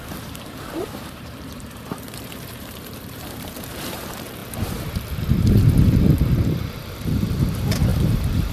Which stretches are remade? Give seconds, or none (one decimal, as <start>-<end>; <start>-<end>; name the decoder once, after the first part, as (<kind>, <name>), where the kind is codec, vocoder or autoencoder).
0.0-8.5 (vocoder, BigVGAN v2)

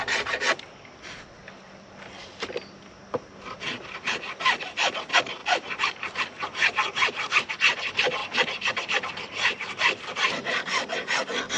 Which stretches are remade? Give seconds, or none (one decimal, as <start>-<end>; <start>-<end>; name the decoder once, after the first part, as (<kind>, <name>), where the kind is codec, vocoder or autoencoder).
5.4-7.5 (vocoder, BigVGAN v2); 8.2-9.8

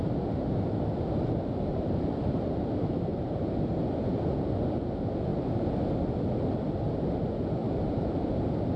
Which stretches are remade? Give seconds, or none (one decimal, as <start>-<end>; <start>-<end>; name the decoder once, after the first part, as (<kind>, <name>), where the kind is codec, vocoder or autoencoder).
1.7-2.4 (vocoder, BigVGAN v2); 5.3-5.9; 7.6-8.4

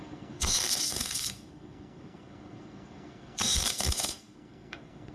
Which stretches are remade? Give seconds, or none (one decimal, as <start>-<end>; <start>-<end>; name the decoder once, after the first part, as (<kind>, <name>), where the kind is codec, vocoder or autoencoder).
0.0-5.1 (codec, SNAC)

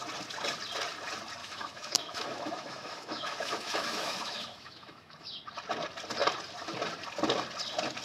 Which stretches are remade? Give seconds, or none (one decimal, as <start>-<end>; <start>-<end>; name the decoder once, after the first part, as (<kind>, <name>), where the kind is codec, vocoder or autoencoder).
1.4-5.4 (autoencoder, DAC-VAE)

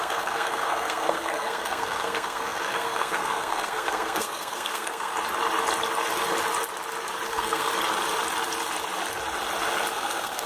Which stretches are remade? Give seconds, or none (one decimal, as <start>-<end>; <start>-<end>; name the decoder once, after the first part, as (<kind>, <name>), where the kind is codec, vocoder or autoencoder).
0.0-5.1 (codec, SNAC); 7.3-7.7; 9.9-10.5

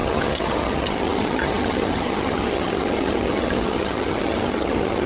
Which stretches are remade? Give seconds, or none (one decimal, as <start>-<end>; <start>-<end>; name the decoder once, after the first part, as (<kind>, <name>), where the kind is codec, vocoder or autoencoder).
0.0-5.1 (vocoder, HiFi-GAN)

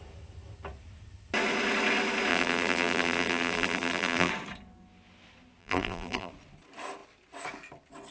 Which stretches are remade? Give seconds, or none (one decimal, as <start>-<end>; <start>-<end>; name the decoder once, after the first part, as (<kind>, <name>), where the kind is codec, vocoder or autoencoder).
2.3-4.3 (vocoder, BigVGAN v2); 5.6-6.3